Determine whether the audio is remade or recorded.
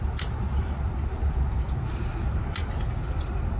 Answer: recorded